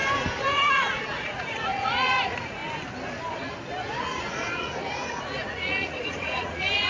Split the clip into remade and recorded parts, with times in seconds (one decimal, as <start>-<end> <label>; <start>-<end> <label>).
0.0-0.5 recorded; 0.5-2.6 remade; 2.6-4.0 recorded; 4.0-6.9 remade